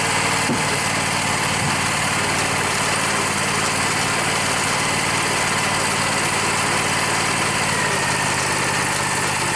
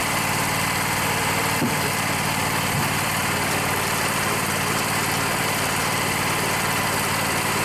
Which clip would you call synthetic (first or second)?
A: second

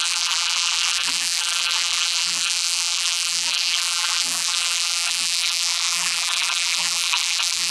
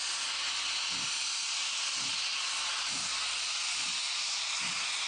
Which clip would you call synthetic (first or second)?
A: first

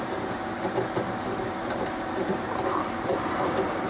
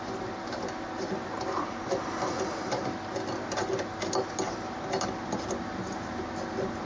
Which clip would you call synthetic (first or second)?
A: first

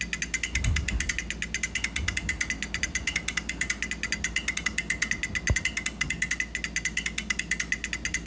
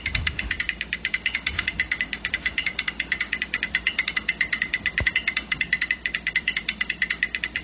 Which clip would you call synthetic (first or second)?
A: second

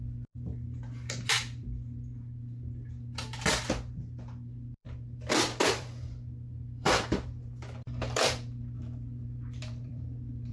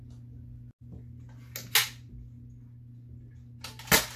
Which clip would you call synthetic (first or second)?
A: first